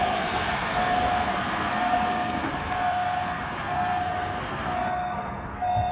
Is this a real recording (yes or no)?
no